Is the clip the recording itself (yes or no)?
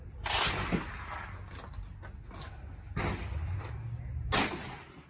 yes